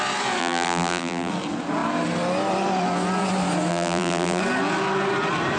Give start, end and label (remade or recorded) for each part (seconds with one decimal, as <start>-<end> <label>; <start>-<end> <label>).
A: 0.0-0.4 recorded; 0.4-1.3 remade; 1.3-3.7 recorded; 3.7-4.4 remade; 4.4-5.6 recorded